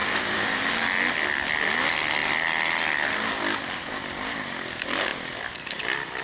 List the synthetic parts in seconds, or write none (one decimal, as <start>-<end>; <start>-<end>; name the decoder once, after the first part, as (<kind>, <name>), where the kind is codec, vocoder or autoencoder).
0.0-0.7 (vocoder, BigVGAN v2); 2.2-3.9; 5.1-5.8